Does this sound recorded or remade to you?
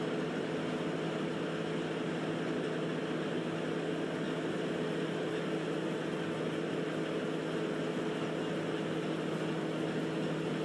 recorded